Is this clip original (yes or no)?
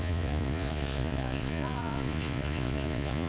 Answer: no